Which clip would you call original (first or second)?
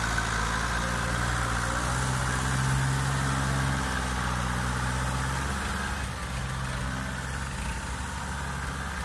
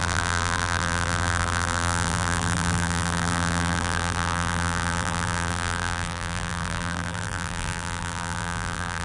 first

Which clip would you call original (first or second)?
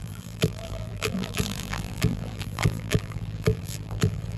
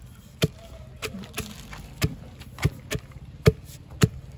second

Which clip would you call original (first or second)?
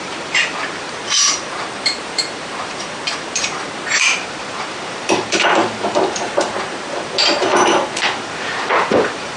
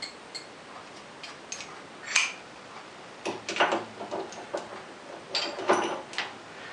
second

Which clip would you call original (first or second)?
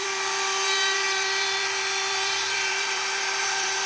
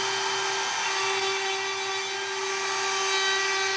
second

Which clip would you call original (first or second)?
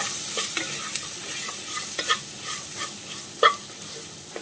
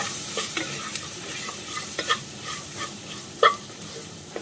first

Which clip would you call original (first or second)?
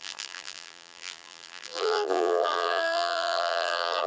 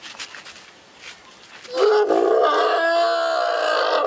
second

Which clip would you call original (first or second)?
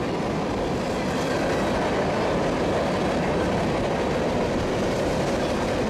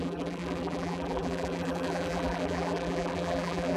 first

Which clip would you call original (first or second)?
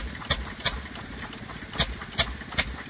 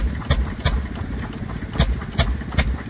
second